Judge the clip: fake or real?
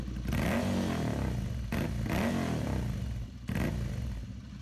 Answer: real